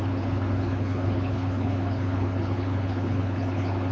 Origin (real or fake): fake